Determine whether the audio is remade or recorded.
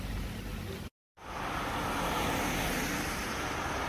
recorded